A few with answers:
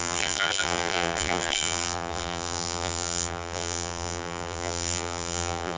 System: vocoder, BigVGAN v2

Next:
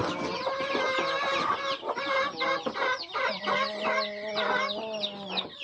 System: none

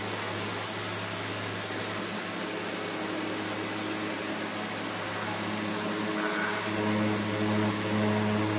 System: none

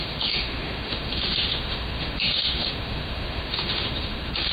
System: autoencoder, DAC-VAE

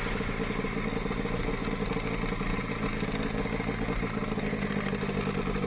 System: none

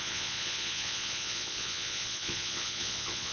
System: vocoder, Vocos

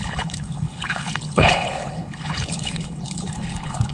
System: codec, HILCodec